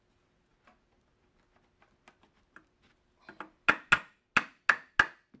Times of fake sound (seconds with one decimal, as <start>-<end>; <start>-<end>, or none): none